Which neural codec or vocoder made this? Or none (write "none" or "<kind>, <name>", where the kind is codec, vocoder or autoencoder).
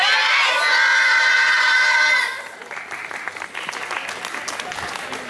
none